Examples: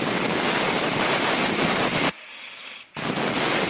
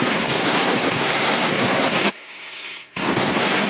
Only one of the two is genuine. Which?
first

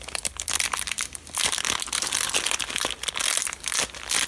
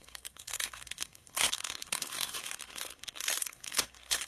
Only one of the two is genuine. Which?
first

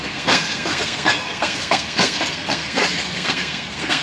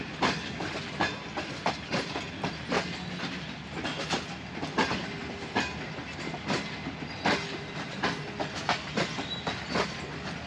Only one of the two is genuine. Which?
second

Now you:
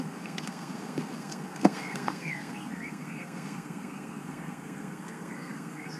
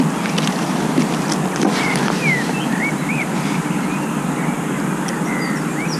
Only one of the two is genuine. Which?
second